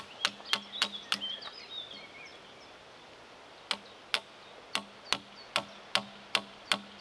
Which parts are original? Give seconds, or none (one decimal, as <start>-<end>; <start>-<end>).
0.0-7.0